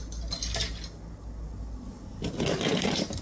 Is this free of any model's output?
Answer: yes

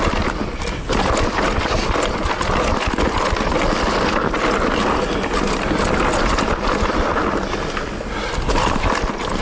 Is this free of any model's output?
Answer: yes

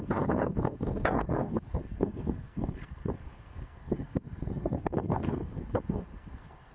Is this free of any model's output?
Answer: no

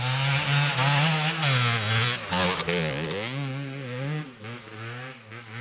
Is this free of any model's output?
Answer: yes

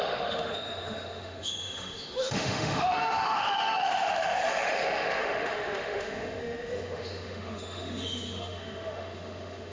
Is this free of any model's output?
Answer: no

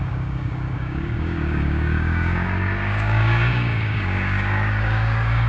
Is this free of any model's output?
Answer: no